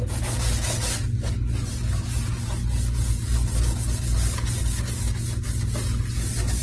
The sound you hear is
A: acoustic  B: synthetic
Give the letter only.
A